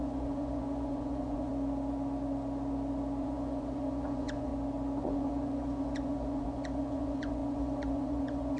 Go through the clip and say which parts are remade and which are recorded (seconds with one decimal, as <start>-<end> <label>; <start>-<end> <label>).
0.0-1.5 remade; 1.5-3.2 recorded; 3.2-4.5 remade; 4.5-5.0 recorded; 5.0-8.6 remade